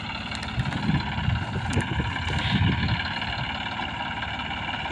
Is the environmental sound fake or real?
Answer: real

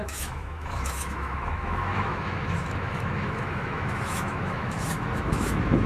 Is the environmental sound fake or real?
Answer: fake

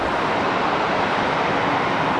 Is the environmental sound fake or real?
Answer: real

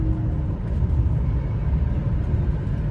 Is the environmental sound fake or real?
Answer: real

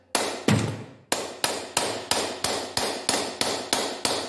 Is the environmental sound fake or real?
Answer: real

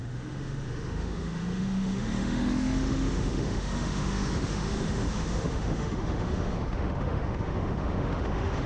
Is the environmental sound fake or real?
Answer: fake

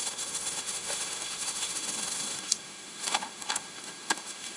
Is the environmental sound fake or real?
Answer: fake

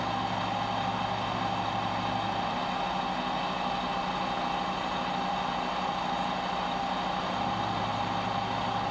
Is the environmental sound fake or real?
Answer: real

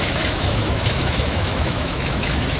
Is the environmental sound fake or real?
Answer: fake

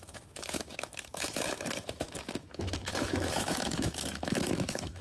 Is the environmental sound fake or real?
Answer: fake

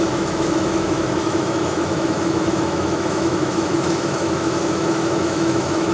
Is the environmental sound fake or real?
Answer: fake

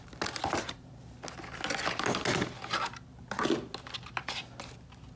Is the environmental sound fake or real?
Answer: real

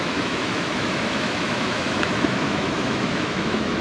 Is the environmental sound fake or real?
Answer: fake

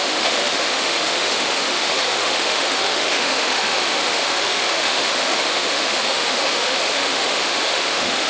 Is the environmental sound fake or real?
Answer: fake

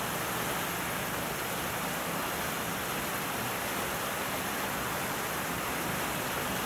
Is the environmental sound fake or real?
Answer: real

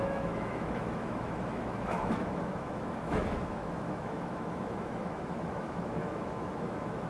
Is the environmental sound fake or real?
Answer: fake